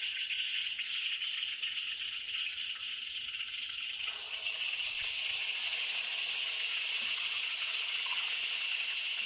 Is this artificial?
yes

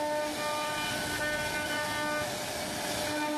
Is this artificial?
no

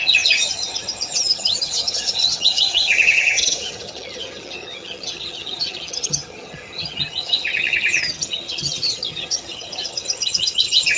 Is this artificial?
yes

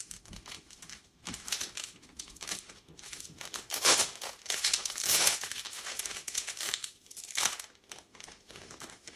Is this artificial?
yes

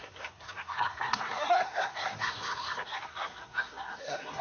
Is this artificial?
yes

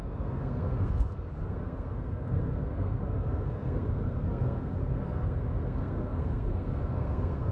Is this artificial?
yes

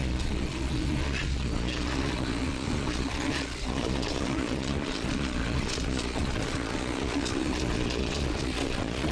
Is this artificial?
yes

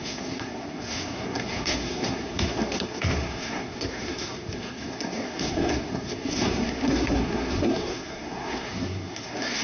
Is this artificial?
yes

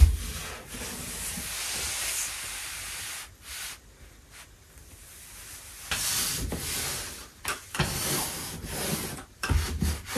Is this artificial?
no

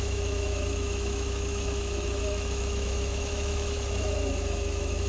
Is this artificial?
yes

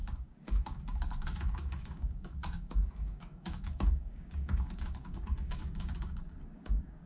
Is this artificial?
yes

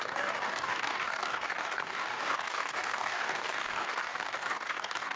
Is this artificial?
yes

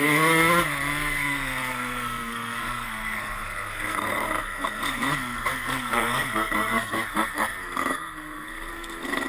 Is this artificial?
yes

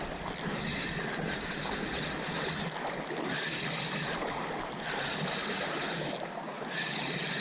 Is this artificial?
no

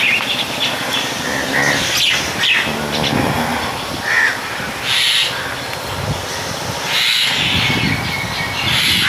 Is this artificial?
no